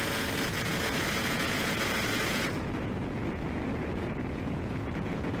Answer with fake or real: fake